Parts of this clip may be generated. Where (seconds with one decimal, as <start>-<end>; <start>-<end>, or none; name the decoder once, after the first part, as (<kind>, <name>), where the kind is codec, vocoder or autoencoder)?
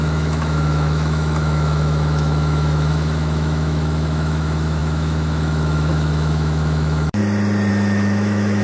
0.0-7.2 (autoencoder, DAC-VAE); 7.7-8.6